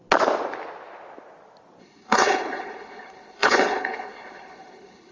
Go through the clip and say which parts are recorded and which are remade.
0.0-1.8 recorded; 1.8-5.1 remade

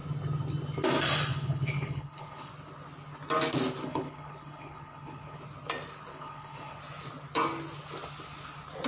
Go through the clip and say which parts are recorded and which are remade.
0.0-1.3 recorded; 1.3-2.5 remade; 2.5-3.8 recorded; 3.8-5.4 remade; 5.4-6.1 recorded; 6.1-6.8 remade; 6.8-8.9 recorded

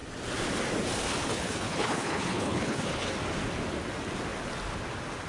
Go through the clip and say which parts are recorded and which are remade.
0.0-1.2 recorded; 1.2-3.1 remade; 3.1-5.3 recorded